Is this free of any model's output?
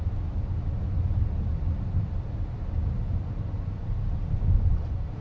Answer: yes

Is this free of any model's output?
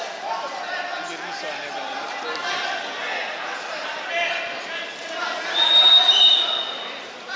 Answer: yes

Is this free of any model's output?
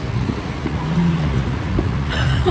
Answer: no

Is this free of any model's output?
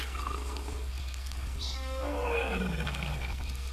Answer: no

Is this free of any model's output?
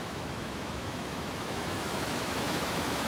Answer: no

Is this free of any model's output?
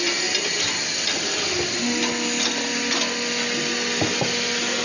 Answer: yes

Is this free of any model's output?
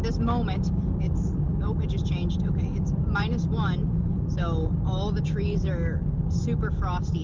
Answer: yes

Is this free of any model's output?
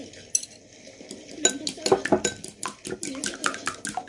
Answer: yes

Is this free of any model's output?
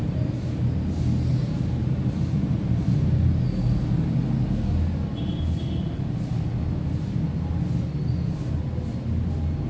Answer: yes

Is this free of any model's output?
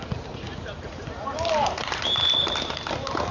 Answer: yes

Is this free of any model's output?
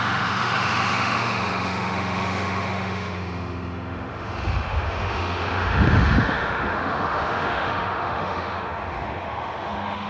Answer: no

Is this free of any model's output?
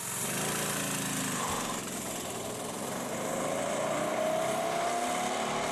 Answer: yes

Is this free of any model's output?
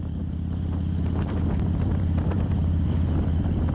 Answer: no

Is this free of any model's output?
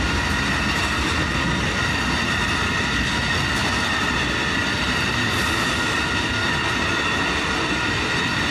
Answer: yes